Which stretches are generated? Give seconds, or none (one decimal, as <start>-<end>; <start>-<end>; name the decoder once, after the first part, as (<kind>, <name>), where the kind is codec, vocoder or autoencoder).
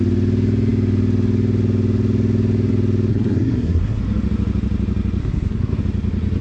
3.1-4.0 (codec, SNAC); 5.2-5.8